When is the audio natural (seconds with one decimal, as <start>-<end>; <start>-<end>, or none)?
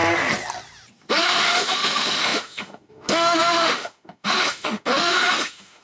0.0-1.2